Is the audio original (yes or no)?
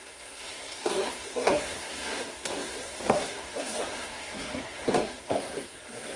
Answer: no